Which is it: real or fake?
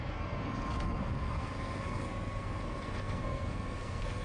fake